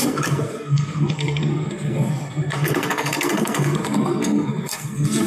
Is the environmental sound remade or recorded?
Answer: remade